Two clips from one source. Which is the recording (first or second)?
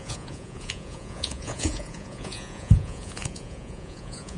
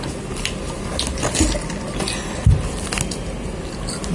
second